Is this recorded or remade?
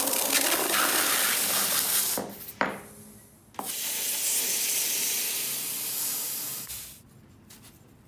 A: recorded